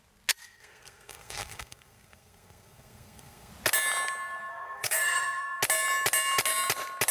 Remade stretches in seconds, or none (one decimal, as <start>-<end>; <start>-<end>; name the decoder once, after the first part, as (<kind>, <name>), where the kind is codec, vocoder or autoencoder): 0.4-3.5 (codec, SNAC); 4.5-5.6